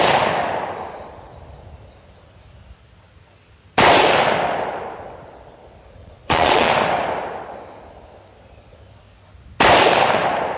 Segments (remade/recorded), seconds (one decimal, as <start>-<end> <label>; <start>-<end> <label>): 0.0-6.0 recorded; 6.0-6.7 remade; 6.7-10.6 recorded

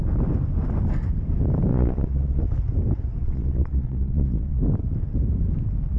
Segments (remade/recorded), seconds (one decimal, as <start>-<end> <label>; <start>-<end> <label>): 0.0-1.7 recorded; 1.7-2.4 remade; 2.4-3.2 recorded; 3.2-4.6 remade; 4.6-6.0 recorded

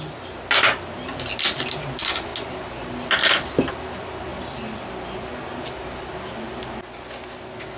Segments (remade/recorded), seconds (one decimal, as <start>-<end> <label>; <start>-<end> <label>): 0.0-7.8 recorded